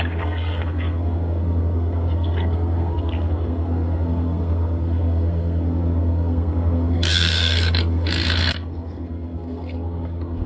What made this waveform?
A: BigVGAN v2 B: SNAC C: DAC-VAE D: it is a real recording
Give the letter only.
B